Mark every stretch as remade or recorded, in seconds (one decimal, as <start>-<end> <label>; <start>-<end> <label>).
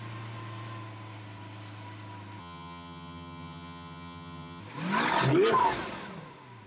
0.0-2.4 recorded; 2.4-4.6 remade; 4.6-6.7 recorded